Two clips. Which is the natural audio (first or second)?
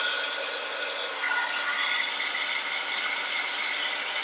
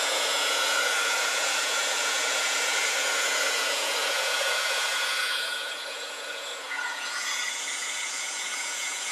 first